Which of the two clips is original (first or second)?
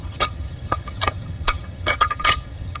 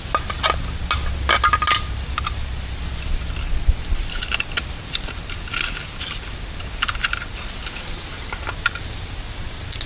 second